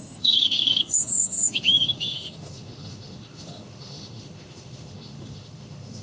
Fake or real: fake